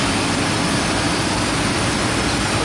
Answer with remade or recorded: recorded